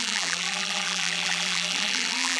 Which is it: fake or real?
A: fake